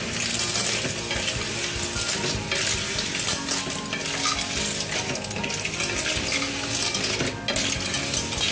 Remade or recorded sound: recorded